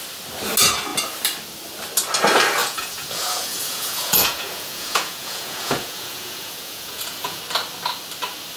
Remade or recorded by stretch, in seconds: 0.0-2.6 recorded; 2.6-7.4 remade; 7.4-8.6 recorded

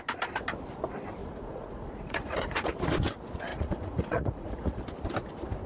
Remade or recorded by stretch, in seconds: 0.0-1.2 recorded; 1.2-2.8 remade; 2.8-3.5 recorded; 3.5-4.8 remade; 4.8-5.7 recorded

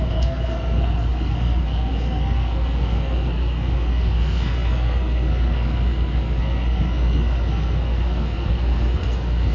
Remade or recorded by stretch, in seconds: 0.0-9.5 remade

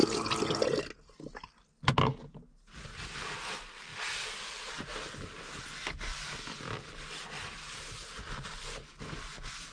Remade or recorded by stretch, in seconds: 0.0-9.7 recorded

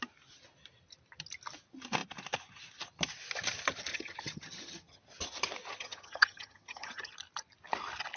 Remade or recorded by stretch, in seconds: 0.0-3.9 recorded; 3.9-5.0 remade; 5.0-5.7 recorded; 5.7-7.1 remade; 7.1-8.2 recorded

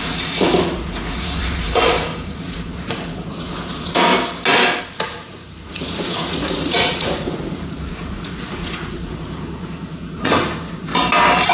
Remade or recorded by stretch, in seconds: 0.0-4.1 remade; 4.1-4.8 recorded; 4.8-10.9 remade; 10.9-11.5 recorded